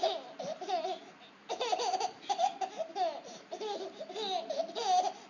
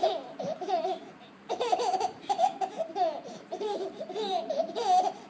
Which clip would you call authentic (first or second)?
first